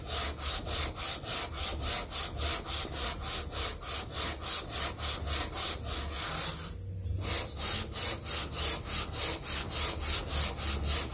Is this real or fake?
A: real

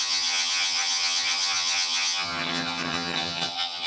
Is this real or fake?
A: fake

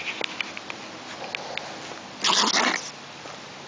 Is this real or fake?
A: real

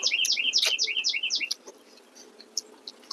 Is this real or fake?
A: real